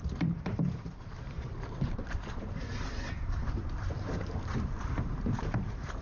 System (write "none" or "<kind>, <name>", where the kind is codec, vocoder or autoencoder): vocoder, BigVGAN v2